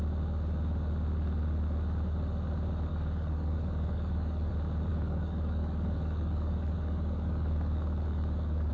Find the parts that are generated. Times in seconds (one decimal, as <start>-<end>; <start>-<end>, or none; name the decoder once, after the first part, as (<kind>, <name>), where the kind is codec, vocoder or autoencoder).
2.9-4.5 (codec, DAC); 4.9-8.7